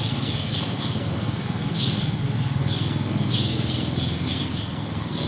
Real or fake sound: fake